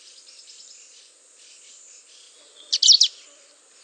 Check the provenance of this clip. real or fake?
real